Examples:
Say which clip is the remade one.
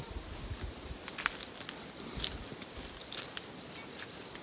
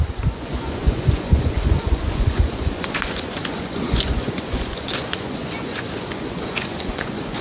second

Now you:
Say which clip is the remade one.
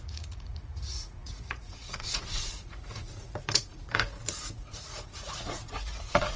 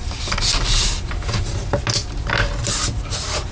first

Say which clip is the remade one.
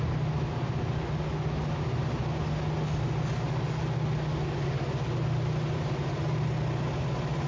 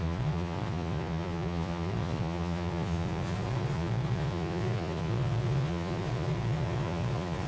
second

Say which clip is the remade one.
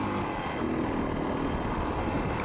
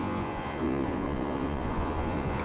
second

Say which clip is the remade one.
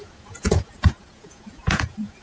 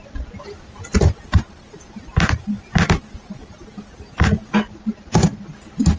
first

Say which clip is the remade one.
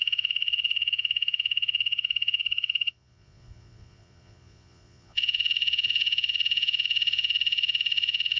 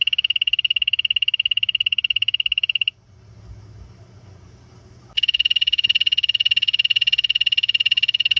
first